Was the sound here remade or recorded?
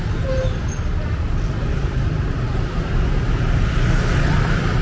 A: recorded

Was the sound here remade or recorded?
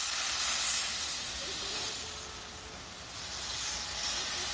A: recorded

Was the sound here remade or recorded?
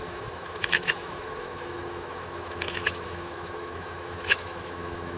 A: remade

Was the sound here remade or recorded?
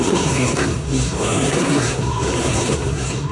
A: remade